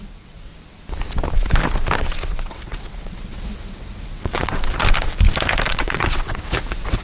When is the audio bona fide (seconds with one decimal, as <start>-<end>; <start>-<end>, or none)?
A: 0.5-2.3; 4.7-5.7